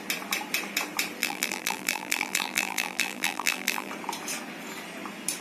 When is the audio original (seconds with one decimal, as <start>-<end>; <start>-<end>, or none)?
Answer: 0.0-1.2; 3.9-5.4